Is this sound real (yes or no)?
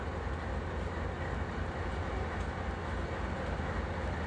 yes